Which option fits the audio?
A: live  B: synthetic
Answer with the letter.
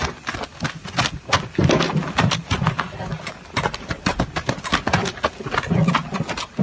A